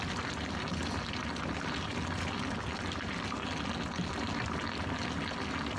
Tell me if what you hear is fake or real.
real